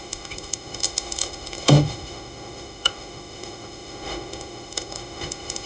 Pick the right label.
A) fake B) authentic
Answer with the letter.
A